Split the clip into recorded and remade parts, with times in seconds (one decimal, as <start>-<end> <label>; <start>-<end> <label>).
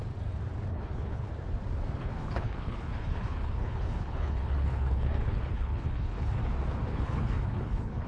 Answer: 0.0-0.7 recorded; 0.7-1.3 remade; 1.3-2.0 recorded; 2.0-6.4 remade; 6.4-6.9 recorded; 6.9-8.1 remade